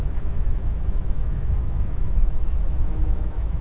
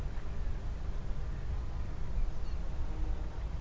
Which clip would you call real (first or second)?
second